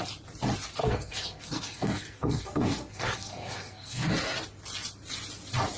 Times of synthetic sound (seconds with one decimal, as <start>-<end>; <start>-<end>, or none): 0.8-4.1